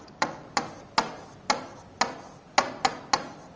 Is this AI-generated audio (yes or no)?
no